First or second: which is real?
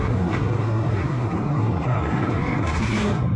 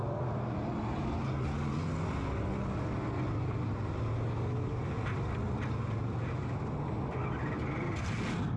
second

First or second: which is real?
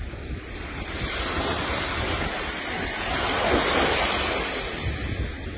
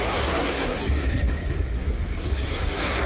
first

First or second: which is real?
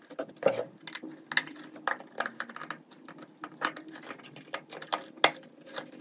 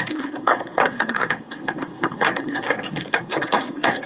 first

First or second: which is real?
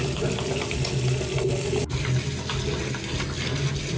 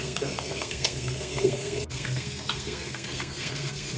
first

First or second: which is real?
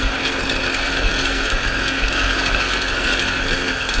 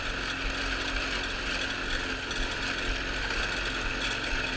second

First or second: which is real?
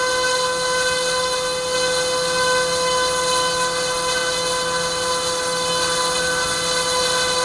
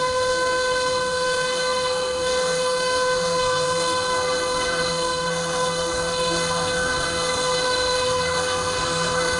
first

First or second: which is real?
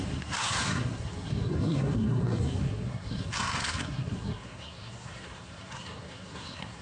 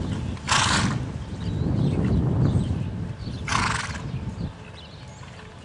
second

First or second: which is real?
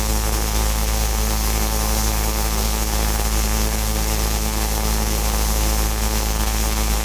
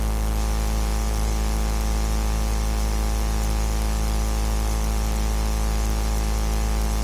second